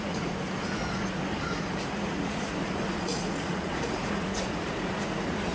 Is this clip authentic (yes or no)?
no